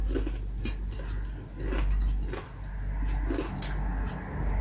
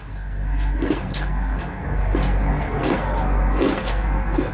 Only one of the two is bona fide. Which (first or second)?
first